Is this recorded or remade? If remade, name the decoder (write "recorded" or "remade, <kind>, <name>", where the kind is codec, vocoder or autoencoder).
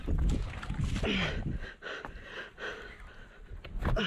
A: recorded